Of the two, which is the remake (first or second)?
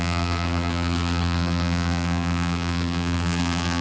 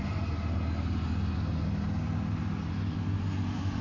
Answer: first